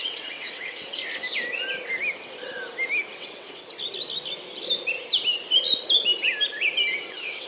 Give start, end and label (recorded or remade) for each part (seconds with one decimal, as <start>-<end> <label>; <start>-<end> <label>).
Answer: 0.0-1.0 remade; 1.0-3.2 recorded; 3.2-3.6 remade; 3.6-6.9 recorded; 6.9-7.5 remade